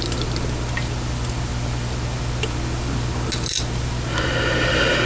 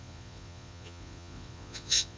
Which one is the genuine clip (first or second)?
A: first